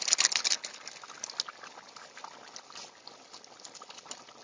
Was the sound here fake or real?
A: real